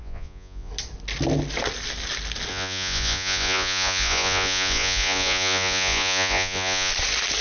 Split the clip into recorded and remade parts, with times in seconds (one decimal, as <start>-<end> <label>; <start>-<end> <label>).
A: 0.0-0.7 remade; 0.7-2.5 recorded; 2.5-6.9 remade; 6.9-7.4 recorded